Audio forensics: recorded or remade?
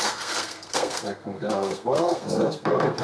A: remade